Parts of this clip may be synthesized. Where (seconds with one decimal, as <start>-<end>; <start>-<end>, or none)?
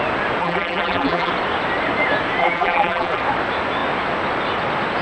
0.4-1.3; 2.4-3.2